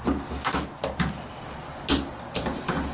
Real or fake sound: real